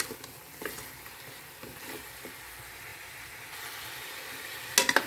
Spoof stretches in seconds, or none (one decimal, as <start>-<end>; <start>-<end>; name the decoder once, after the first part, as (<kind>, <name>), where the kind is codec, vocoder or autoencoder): 2.9-3.5 (vocoder, BigVGAN v2)